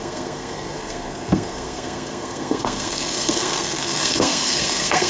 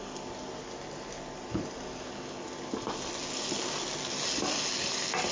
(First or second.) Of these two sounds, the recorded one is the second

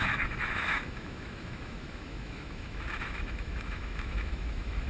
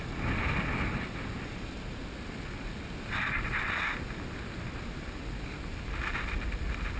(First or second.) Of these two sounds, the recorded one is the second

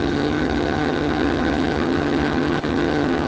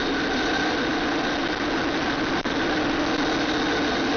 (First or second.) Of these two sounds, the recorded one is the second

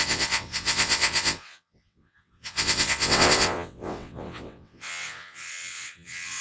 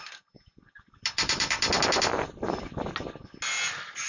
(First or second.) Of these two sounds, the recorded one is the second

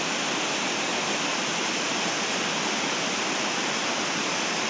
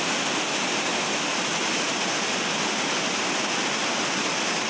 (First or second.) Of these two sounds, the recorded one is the second